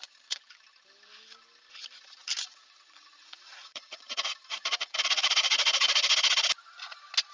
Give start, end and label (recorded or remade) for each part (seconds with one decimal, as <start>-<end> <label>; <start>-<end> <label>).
0.0-0.6 remade; 0.6-2.5 recorded; 2.5-5.3 remade; 5.3-7.3 recorded